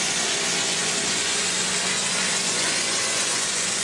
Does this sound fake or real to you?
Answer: fake